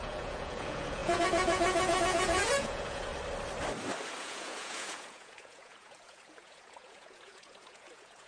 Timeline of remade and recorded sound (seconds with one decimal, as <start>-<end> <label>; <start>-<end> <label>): 0.0-3.1 remade; 3.1-4.2 recorded; 4.2-8.3 remade

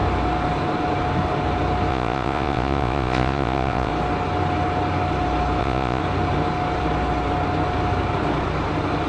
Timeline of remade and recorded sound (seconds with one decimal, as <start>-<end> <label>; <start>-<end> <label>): 0.0-1.9 recorded; 1.9-3.9 remade; 3.9-5.6 recorded; 5.6-6.0 remade; 6.0-9.1 recorded

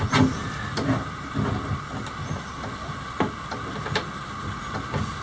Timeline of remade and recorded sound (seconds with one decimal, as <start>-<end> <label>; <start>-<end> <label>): 0.0-5.2 recorded

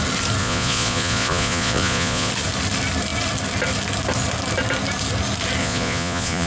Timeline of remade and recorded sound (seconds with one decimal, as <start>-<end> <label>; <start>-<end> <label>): 0.0-0.4 recorded; 0.4-2.3 remade; 2.3-5.6 recorded; 5.6-6.5 remade

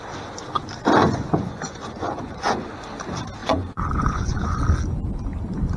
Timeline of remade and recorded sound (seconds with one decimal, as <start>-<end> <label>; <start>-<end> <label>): 0.0-1.0 recorded; 1.0-2.8 remade; 2.8-3.4 recorded; 3.4-4.6 remade; 4.6-5.8 recorded